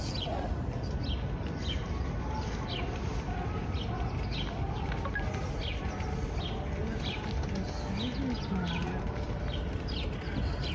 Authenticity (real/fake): real